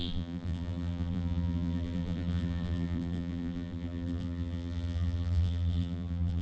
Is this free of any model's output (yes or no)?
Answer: no